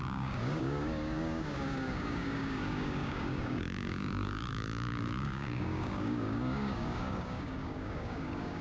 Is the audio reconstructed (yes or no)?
yes